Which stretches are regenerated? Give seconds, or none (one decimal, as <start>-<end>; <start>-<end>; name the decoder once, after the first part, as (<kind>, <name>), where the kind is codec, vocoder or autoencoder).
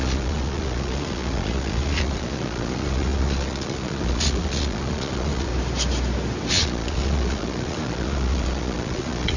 0.0-5.5 (vocoder, Vocos); 6.5-9.4